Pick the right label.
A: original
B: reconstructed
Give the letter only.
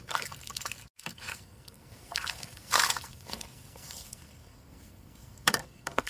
B